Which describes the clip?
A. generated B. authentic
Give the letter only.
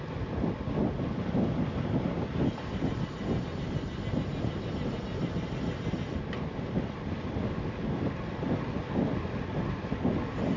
B